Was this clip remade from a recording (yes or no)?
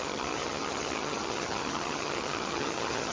yes